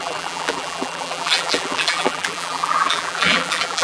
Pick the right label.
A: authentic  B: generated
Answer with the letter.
B